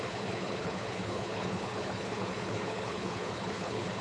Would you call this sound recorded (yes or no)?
no